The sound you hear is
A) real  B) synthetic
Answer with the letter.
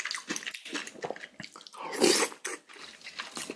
A